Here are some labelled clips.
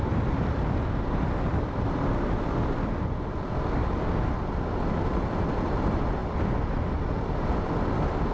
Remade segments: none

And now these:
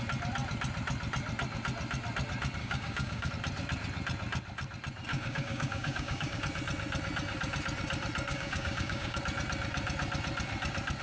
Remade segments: 2.6-3.3 (codec, DAC); 5.1-6.4; 8.3-9.2

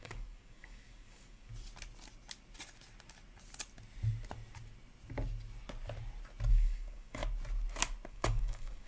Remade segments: 0.0-1.5 (codec, DAC); 6.5-7.2; 8.1-8.9